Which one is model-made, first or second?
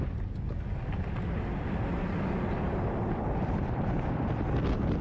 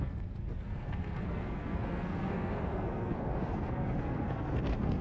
second